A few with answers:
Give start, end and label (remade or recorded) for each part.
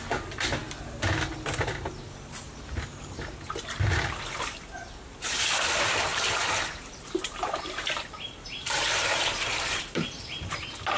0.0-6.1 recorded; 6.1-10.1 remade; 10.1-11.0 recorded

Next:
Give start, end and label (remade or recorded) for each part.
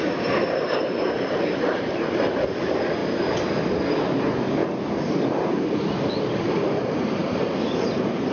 0.0-4.6 remade; 4.6-5.1 recorded; 5.1-8.3 remade